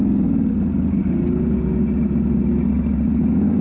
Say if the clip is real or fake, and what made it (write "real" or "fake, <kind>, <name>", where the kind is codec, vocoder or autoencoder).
real